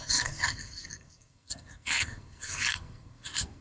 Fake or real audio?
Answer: fake